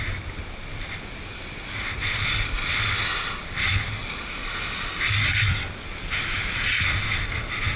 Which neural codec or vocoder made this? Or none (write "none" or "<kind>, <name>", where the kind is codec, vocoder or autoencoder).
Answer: none